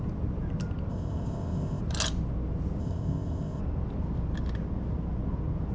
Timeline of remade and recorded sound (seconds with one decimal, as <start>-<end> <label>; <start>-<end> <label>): 0.0-0.9 recorded; 0.9-1.8 remade; 1.8-2.8 recorded; 2.8-3.6 remade; 3.6-5.7 recorded